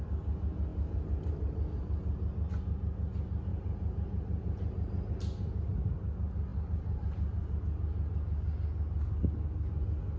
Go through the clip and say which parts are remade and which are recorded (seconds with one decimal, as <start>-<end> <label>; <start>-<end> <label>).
0.0-0.7 recorded; 0.7-2.5 remade; 2.5-3.5 recorded; 3.5-5.1 remade; 5.1-6.5 recorded; 6.5-7.6 remade; 7.6-10.2 recorded